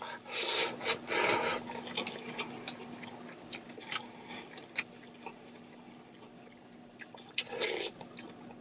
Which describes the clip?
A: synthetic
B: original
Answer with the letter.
B